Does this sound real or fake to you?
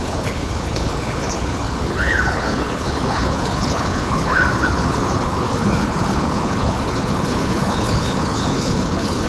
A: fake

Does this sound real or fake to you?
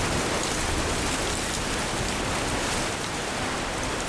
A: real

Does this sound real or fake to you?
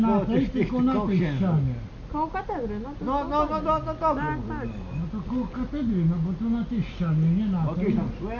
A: real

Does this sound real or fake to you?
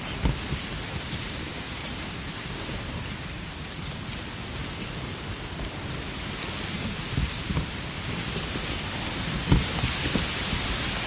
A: real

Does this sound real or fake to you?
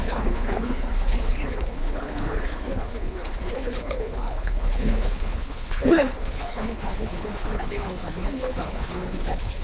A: fake